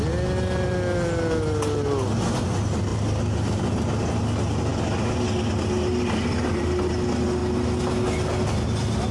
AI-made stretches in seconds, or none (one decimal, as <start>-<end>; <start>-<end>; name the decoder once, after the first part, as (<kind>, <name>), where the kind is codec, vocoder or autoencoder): none